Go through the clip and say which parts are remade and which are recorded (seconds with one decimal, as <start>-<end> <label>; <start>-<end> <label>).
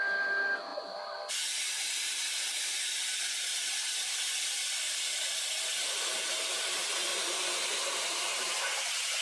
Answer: 0.0-7.1 recorded; 7.1-8.6 remade; 8.6-9.2 recorded